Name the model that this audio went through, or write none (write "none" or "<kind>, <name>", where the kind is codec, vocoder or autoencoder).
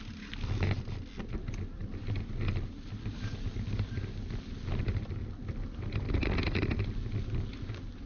none